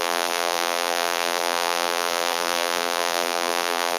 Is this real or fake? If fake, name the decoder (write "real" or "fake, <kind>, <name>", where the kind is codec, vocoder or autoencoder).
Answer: fake, vocoder, BigVGAN v2